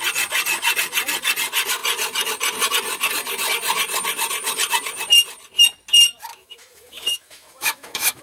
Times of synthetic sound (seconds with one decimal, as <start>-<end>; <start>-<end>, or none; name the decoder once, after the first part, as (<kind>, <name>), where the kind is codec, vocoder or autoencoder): 6.3-8.2 (autoencoder, DAC-VAE)